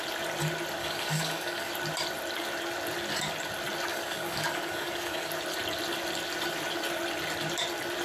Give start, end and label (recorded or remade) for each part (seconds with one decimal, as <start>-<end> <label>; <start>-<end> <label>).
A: 0.0-0.8 recorded; 0.8-1.7 remade; 1.7-3.9 recorded; 3.9-5.3 remade; 5.3-8.0 recorded